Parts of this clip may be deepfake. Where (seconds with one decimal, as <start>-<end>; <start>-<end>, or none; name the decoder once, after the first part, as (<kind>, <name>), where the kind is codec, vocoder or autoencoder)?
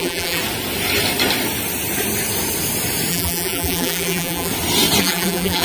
0.0-0.4 (vocoder, BigVGAN v2); 3.1-4.5; 5.0-5.6